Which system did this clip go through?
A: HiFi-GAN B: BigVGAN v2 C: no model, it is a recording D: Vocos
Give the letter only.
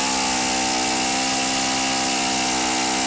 C